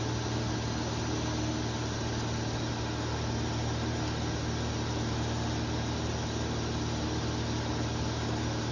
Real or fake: real